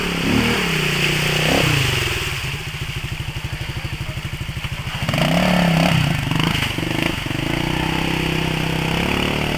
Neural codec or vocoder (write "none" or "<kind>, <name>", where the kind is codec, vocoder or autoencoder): none